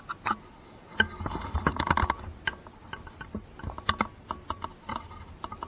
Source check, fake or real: real